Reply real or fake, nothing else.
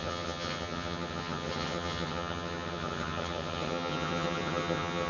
fake